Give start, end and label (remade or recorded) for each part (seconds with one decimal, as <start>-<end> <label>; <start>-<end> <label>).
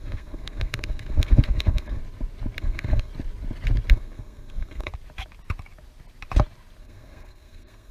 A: 0.0-2.0 remade; 2.0-2.6 recorded; 2.6-3.1 remade; 3.1-3.9 recorded; 3.9-4.9 remade; 4.9-6.8 recorded; 6.8-7.9 remade